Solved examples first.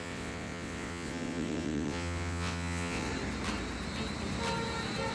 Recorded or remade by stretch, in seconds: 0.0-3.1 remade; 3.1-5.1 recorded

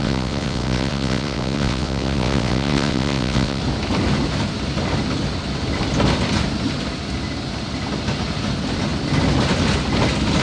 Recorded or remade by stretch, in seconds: 0.0-3.6 remade; 3.6-10.4 recorded

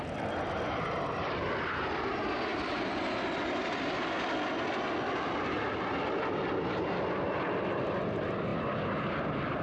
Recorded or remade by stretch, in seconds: 0.0-9.6 recorded

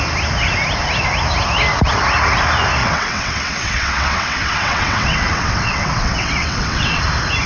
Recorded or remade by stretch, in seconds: 0.0-2.8 recorded; 2.8-7.0 remade; 7.0-7.5 recorded

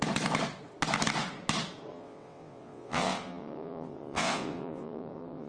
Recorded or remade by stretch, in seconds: 0.0-1.9 recorded; 1.9-5.5 remade

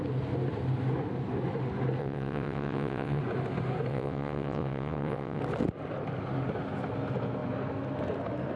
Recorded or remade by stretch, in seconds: 0.0-2.0 recorded; 2.0-3.2 remade; 3.2-3.9 recorded; 3.9-5.4 remade; 5.4-8.6 recorded

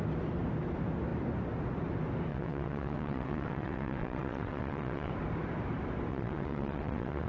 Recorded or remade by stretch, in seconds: 0.0-2.3 recorded; 2.3-5.1 remade; 5.1-6.1 recorded; 6.1-7.3 remade